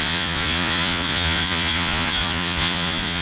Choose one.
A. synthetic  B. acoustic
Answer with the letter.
A